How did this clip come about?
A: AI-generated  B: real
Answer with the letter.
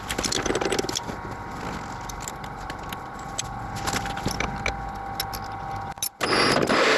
B